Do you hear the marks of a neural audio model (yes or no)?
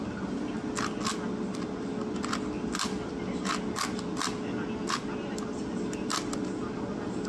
no